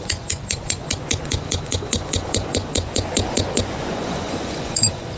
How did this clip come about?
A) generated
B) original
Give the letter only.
A